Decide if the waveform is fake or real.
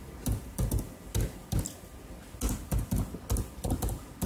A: real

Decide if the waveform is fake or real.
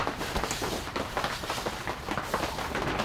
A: real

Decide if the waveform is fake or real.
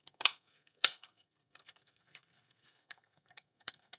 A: fake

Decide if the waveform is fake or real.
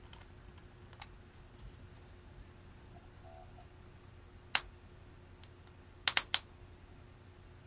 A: real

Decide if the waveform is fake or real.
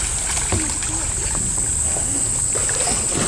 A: real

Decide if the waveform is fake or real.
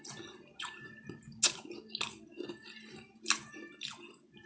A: real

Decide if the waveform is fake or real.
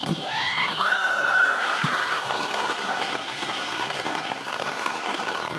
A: fake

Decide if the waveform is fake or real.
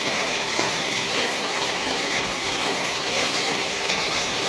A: fake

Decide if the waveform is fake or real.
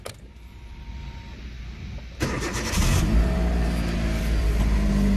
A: real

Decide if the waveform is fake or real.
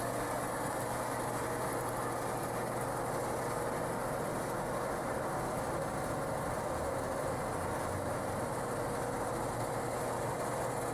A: real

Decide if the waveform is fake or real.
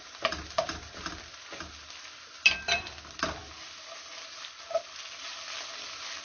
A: real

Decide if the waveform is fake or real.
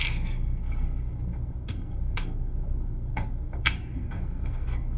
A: fake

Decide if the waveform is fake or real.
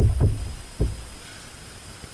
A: real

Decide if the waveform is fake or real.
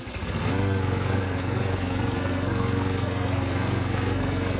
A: fake